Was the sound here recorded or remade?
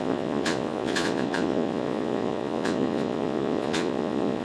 remade